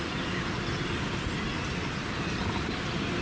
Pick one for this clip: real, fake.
real